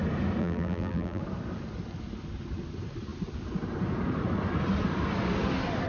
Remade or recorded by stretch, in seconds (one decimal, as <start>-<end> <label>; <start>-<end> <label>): 0.0-0.4 recorded; 0.4-1.2 remade; 1.2-5.9 recorded

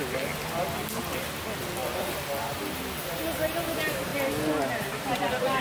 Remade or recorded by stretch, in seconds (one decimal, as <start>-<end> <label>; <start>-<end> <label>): 0.0-1.8 recorded; 1.8-3.0 remade; 3.0-5.6 recorded

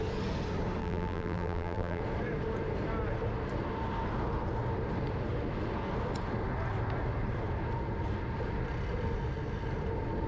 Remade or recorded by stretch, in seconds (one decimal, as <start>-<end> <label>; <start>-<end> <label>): 0.0-0.8 recorded; 0.8-2.0 remade; 2.0-10.3 recorded

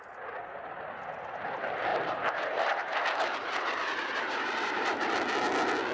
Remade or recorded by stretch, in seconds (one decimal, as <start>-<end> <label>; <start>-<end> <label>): 0.0-1.9 recorded; 1.9-5.1 remade; 5.1-5.9 recorded

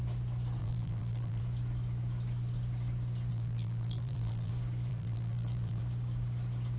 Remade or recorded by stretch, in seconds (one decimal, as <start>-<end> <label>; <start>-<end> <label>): 0.0-0.6 recorded; 0.6-1.4 remade; 1.4-3.3 recorded; 3.3-4.5 remade; 4.5-4.9 recorded; 4.9-5.8 remade; 5.8-6.8 recorded

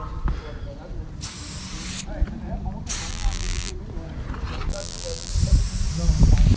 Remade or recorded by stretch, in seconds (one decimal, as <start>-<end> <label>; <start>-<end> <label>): 0.0-3.1 recorded; 3.1-3.7 remade; 3.7-4.7 recorded; 4.7-5.3 remade; 5.3-6.6 recorded